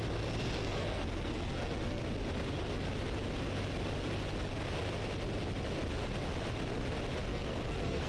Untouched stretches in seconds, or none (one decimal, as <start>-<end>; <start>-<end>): 0.0-0.6; 2.0-7.3